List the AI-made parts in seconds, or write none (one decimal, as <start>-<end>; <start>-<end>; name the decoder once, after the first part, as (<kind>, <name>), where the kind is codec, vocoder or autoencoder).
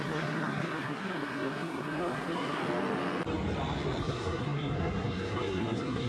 0.0-2.6 (codec, SNAC); 4.0-6.1